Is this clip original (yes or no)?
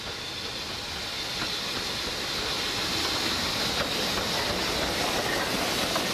yes